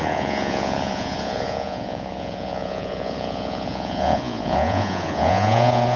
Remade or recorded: remade